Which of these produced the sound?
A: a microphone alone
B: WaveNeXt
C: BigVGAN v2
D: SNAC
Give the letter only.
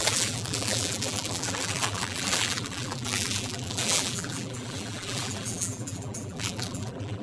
C